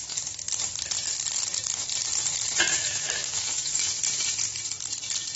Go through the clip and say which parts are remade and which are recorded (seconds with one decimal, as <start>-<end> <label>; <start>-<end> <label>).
0.0-2.8 recorded; 2.8-3.9 remade; 3.9-5.4 recorded